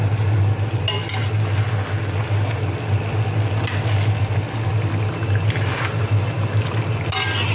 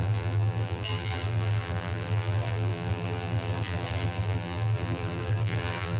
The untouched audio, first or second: first